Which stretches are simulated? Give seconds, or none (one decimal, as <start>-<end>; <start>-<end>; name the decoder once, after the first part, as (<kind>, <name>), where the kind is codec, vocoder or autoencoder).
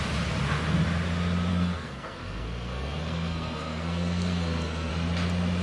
1.5-4.9 (codec, SNAC)